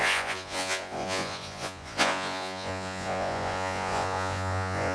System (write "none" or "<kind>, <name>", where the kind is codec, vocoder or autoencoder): vocoder, Vocos